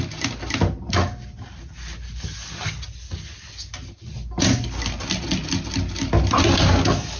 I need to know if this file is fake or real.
real